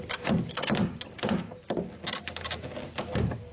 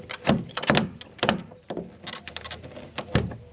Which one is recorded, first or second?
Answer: first